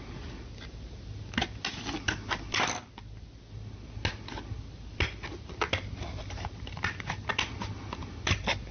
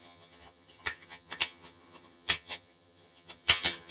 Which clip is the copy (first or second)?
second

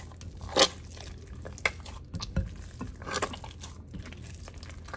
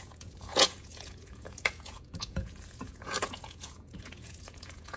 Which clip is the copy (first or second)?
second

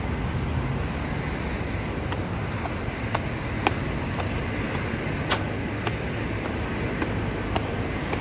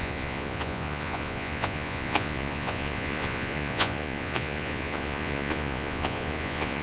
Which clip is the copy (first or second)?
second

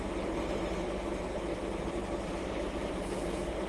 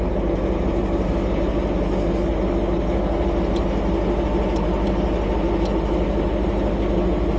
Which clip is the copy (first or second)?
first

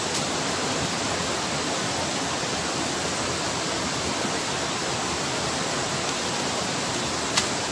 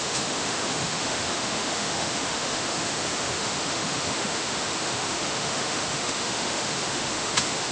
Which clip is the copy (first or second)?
second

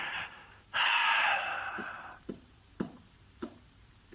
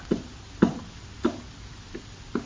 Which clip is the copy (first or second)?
first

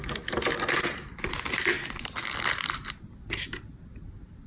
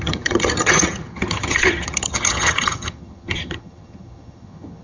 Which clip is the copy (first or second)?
second